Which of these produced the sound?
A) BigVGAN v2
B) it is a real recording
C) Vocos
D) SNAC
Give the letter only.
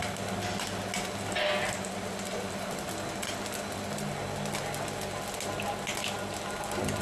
B